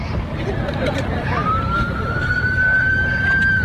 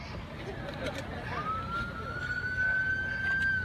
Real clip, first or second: second